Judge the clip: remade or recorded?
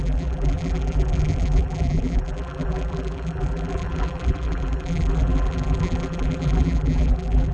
remade